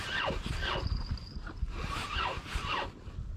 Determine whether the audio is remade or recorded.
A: recorded